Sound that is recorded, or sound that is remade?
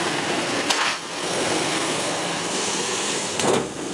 remade